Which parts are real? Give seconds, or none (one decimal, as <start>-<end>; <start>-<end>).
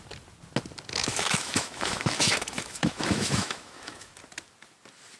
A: 0.0-1.0; 4.1-5.2